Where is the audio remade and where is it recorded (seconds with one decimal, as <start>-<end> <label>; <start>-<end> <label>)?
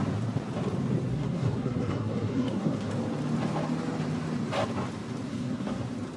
0.0-1.1 recorded; 1.1-2.9 remade; 2.9-5.3 recorded; 5.3-5.8 remade; 5.8-6.2 recorded